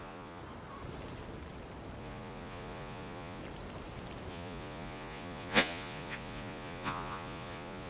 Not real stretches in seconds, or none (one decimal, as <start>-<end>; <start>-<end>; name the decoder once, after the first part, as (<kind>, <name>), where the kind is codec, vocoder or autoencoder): 0.0-0.4 (vocoder, Vocos); 2.0-3.4; 4.3-7.9